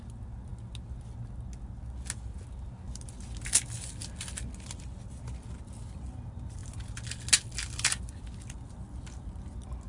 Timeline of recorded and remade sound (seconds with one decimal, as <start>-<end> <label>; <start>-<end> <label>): 0.0-9.9 recorded